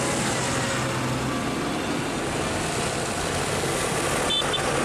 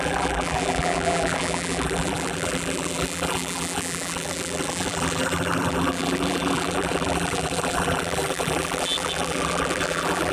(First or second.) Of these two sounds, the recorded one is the first